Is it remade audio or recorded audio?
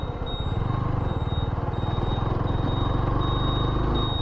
recorded